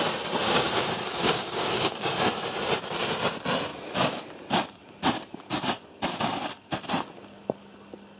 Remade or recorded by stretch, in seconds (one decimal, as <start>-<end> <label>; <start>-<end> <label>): 0.0-0.4 recorded; 0.4-2.2 remade; 2.2-8.2 recorded